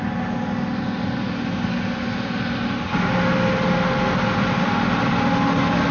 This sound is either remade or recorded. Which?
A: recorded